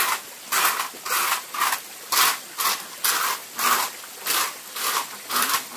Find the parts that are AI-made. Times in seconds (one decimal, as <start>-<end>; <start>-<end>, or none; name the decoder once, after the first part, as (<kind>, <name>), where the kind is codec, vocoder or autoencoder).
none